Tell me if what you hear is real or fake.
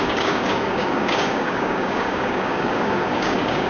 fake